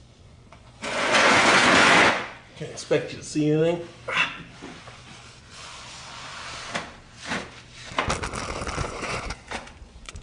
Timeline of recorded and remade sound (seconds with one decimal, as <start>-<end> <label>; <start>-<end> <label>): 0.0-3.6 remade; 3.6-4.5 recorded; 4.5-6.3 remade; 6.3-8.8 recorded; 8.8-10.2 remade